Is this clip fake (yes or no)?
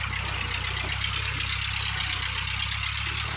no